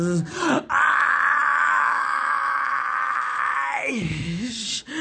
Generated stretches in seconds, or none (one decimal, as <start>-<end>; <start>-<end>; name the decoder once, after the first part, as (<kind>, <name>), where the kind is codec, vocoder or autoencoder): 1.5-4.5 (autoencoder, DAC-VAE)